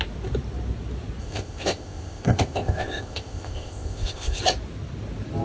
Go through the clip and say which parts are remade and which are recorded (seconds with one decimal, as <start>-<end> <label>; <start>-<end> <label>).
0.0-1.2 recorded; 1.2-4.4 remade; 4.4-5.4 recorded